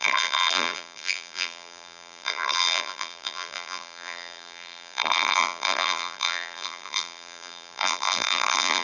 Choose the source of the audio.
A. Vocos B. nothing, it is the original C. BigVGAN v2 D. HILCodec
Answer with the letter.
C